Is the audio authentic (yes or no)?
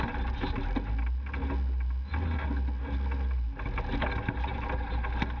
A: yes